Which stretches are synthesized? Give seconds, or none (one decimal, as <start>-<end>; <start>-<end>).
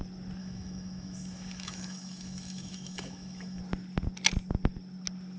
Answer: 0.4-3.6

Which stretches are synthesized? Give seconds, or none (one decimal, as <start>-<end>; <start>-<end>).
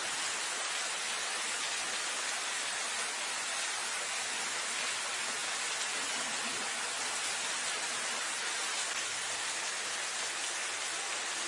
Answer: none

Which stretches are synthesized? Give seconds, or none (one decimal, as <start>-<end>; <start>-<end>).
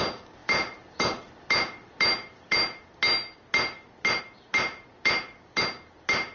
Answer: none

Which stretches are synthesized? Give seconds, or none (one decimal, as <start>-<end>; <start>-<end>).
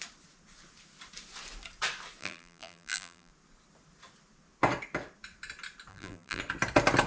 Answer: 2.2-3.3; 5.9-6.4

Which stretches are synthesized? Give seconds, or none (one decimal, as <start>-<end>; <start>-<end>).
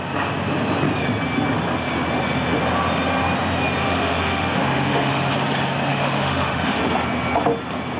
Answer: 3.8-5.3; 5.9-6.8